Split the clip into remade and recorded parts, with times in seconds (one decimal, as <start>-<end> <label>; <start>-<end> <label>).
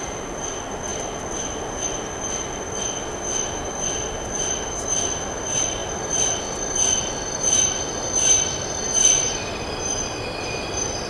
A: 0.0-11.1 recorded